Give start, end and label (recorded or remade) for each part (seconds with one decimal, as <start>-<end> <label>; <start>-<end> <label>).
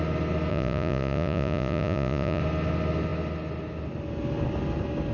0.0-0.5 recorded; 0.5-2.4 remade; 2.4-5.1 recorded